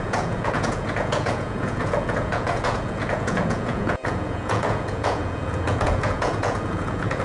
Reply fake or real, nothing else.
fake